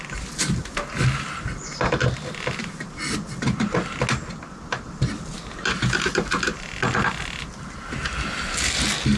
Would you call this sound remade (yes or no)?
no